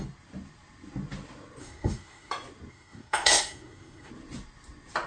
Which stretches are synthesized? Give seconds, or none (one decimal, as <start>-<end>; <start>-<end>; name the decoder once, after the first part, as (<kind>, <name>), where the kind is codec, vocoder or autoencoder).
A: 1.6-2.3 (codec, SNAC); 2.7-4.1